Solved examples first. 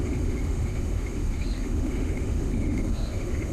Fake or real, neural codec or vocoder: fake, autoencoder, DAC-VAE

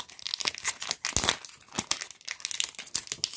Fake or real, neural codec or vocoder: real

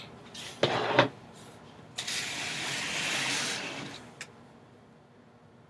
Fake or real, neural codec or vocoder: real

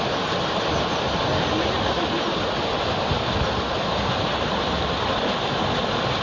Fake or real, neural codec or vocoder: real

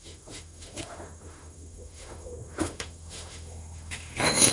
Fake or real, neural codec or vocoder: fake, autoencoder, DAC-VAE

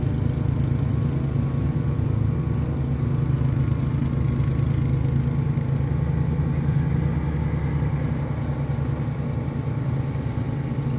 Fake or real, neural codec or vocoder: real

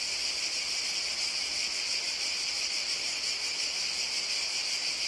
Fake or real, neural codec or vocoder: real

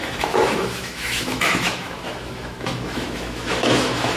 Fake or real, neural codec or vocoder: fake, autoencoder, DAC-VAE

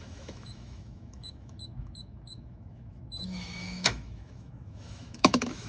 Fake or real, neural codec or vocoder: fake, autoencoder, DAC-VAE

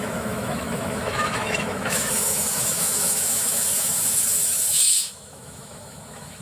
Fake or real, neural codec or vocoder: fake, autoencoder, DAC-VAE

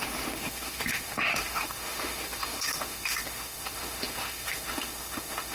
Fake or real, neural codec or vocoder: fake, autoencoder, DAC-VAE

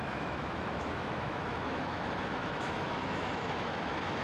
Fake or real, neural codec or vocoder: fake, autoencoder, DAC-VAE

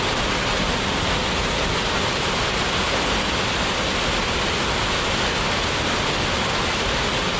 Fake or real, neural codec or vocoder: real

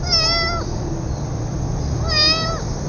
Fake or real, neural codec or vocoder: real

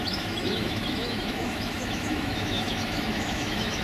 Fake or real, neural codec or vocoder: fake, autoencoder, DAC-VAE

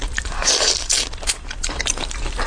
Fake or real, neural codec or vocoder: real